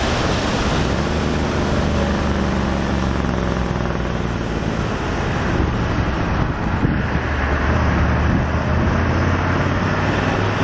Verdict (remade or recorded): recorded